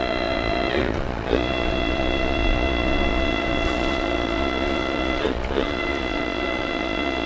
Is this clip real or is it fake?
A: fake